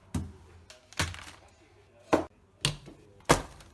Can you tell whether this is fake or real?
real